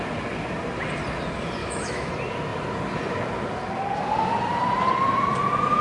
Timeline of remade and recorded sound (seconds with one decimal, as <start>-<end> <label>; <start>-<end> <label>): 0.0-1.6 recorded; 1.6-2.1 remade; 2.1-5.8 recorded